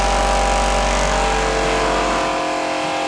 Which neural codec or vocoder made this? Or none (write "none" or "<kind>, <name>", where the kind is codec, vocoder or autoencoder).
none